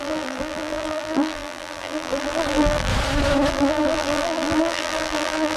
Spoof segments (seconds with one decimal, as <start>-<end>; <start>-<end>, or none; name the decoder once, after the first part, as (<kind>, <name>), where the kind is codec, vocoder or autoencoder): 0.0-2.9 (vocoder, BigVGAN v2); 3.5-5.6